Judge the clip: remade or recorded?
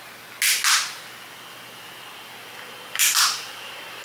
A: recorded